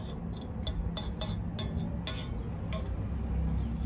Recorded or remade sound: recorded